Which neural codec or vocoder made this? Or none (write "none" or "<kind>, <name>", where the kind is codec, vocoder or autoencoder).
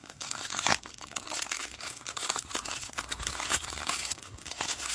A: codec, SNAC